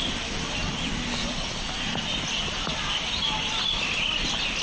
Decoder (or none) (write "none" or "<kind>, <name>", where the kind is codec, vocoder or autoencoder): none